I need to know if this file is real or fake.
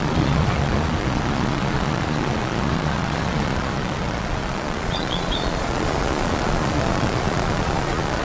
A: fake